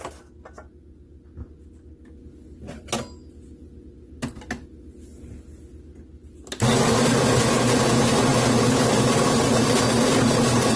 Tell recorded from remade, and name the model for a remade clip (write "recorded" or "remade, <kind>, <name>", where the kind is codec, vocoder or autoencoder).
recorded